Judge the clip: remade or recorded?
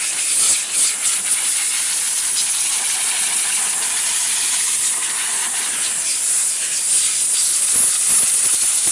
recorded